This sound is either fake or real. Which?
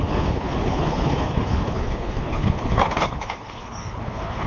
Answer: fake